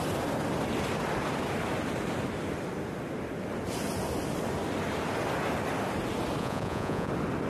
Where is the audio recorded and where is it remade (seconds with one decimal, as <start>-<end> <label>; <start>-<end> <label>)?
0.0-6.4 recorded; 6.4-7.1 remade; 7.1-7.5 recorded